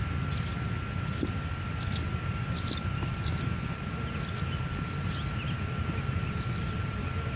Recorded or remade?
recorded